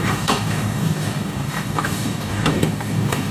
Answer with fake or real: fake